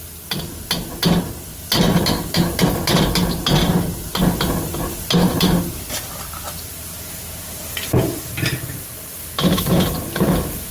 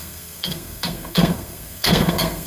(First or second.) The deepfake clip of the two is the second